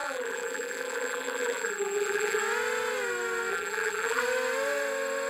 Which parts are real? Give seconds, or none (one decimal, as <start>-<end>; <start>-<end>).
2.4-3.5; 4.2-5.3

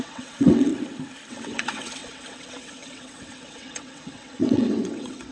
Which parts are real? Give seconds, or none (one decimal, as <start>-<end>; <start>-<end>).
0.7-1.3

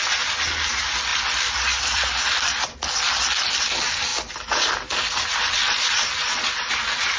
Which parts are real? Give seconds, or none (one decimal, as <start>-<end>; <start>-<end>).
0.0-1.1; 2.8-4.1; 6.7-7.2

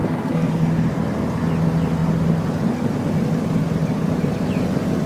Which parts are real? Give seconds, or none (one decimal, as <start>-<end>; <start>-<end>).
0.9-5.1

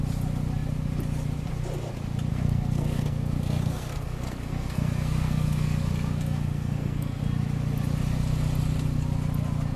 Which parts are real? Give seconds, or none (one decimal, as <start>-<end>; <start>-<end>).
0.0-2.3; 7.2-9.8